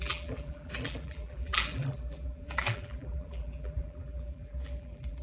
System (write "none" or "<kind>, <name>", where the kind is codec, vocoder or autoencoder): vocoder, BigVGAN v2